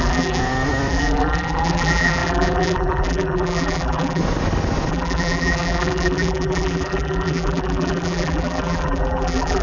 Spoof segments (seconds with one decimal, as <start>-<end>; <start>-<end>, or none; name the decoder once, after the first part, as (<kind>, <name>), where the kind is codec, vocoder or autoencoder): 0.0-0.4 (vocoder, BigVGAN v2); 0.9-4.2; 4.9-9.6